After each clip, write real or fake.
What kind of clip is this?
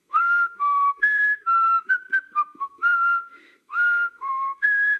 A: fake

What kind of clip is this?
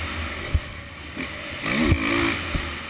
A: real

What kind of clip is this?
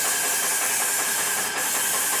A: real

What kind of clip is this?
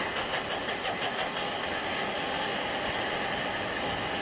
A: real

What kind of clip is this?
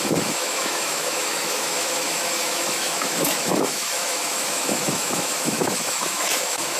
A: fake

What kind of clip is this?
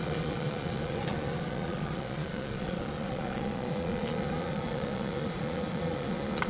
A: fake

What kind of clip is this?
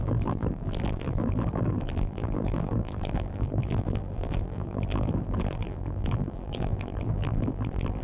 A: fake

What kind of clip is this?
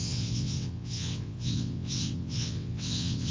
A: fake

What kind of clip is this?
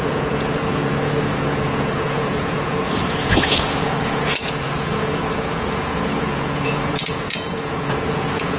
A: fake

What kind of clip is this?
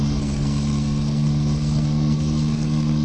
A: fake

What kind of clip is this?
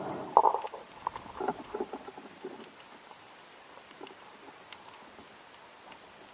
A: real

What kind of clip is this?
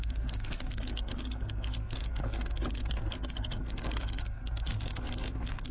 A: fake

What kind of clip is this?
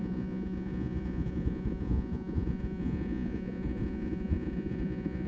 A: fake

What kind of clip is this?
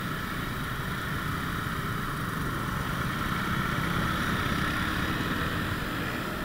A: real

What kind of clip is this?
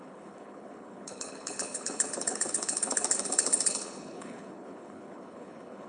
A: fake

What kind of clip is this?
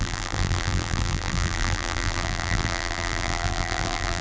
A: fake